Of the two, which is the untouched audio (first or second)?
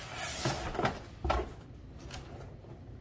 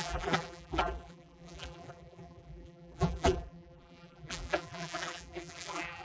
first